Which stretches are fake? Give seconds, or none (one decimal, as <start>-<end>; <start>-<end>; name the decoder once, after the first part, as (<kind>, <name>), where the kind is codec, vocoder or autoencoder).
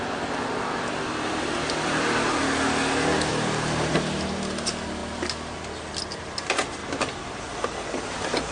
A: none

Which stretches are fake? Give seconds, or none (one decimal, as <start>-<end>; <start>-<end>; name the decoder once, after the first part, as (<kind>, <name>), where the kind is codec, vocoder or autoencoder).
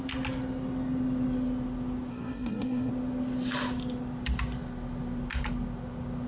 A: 2.1-2.9 (codec, SNAC)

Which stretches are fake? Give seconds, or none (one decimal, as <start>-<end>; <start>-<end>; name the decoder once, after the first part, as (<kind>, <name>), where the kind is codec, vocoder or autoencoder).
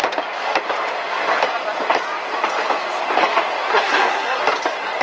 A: 3.7-4.4 (codec, SNAC)